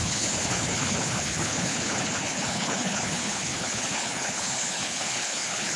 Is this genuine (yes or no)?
no